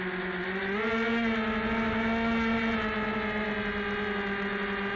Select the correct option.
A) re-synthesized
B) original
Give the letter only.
B